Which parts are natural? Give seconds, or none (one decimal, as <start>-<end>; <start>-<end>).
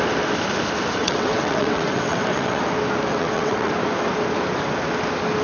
0.0-1.0; 2.6-3.1; 3.7-5.4